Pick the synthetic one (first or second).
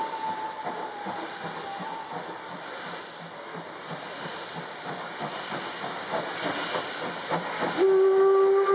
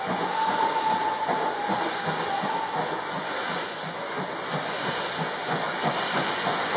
second